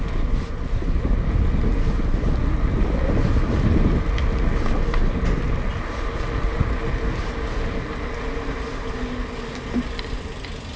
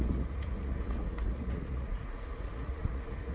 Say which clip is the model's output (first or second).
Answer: second